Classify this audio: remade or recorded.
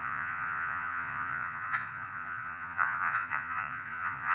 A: remade